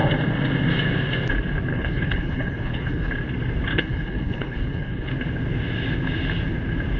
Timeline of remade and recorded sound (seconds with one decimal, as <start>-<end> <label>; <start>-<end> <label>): 0.0-1.7 recorded; 1.7-3.1 remade; 3.1-3.7 recorded; 3.7-5.1 remade; 5.1-7.0 recorded